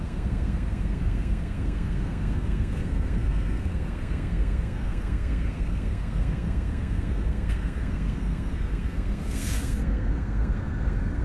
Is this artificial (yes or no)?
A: yes